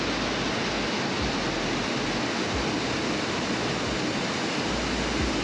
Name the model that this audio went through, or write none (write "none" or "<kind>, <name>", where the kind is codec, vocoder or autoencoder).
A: none